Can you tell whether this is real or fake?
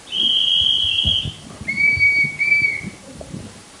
fake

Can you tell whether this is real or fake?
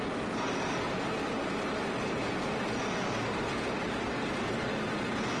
fake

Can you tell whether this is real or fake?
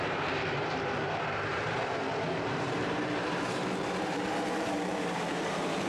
fake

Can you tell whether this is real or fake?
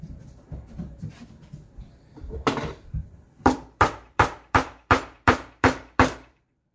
fake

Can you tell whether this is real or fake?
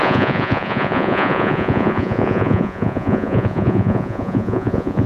fake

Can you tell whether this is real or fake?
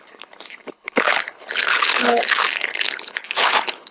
fake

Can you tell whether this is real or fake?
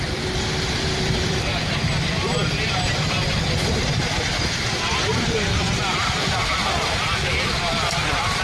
fake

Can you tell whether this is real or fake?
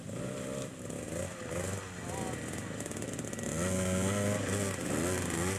real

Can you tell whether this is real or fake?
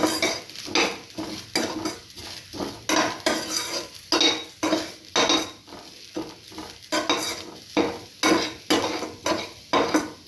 real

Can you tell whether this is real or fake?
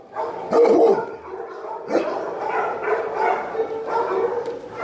real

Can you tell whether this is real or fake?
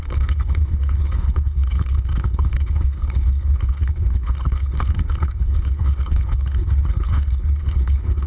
fake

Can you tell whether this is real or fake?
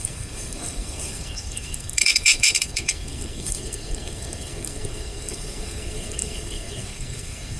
fake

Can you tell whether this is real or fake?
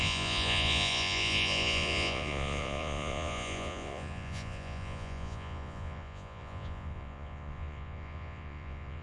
fake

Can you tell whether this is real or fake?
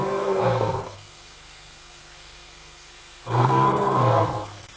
fake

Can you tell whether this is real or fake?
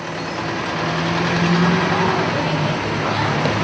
real